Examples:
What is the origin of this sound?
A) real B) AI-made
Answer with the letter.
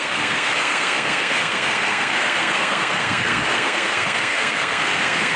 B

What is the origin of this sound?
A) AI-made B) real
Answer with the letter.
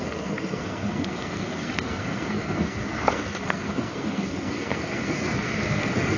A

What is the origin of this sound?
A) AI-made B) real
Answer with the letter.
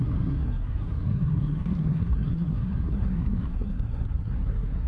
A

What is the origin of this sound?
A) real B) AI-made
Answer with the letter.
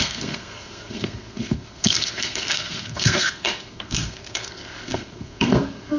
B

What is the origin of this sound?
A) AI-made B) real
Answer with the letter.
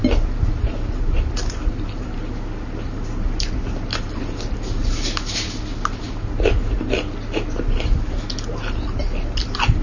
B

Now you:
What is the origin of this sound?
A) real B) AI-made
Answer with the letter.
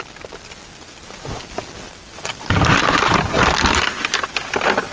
A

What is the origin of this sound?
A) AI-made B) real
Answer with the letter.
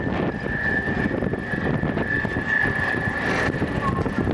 B